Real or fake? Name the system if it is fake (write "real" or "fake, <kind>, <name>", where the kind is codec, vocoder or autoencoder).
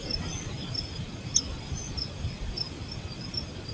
real